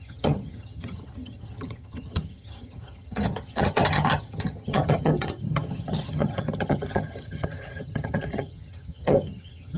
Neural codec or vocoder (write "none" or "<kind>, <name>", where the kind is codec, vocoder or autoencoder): vocoder, HiFi-GAN